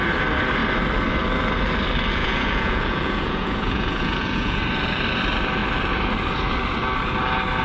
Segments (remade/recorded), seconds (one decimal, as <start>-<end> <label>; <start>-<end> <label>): 0.0-2.2 recorded; 2.2-4.6 remade; 4.6-7.6 recorded